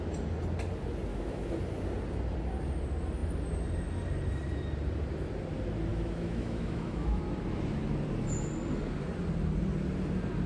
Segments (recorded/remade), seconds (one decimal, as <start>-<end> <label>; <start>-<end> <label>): 0.0-1.1 recorded; 1.1-1.6 remade; 1.6-5.9 recorded; 5.9-7.2 remade; 7.2-10.5 recorded